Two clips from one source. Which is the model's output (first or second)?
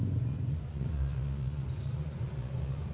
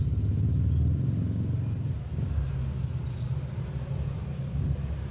first